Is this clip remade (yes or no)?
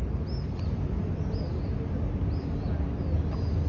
no